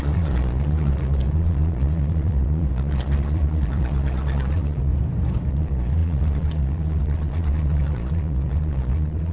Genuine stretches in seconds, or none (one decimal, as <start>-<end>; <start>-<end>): 4.9-5.5